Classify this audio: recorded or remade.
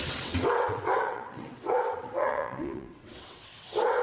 remade